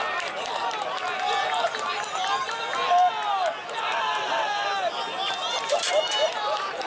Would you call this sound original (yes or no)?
yes